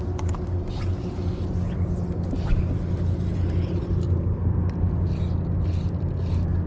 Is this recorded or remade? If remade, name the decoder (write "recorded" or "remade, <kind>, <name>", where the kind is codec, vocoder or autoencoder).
recorded